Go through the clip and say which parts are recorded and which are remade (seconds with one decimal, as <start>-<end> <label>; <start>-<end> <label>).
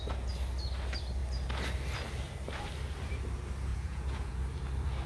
0.0-3.7 recorded; 3.7-4.4 remade; 4.4-5.1 recorded